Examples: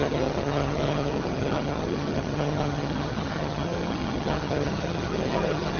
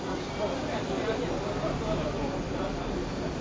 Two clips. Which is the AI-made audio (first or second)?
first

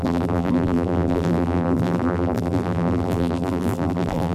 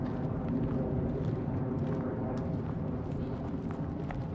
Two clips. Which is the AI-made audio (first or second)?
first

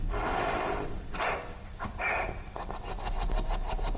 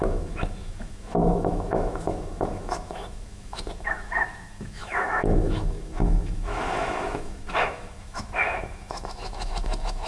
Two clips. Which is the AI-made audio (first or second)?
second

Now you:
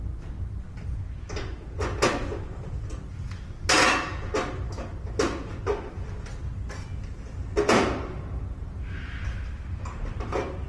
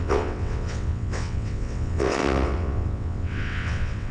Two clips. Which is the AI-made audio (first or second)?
second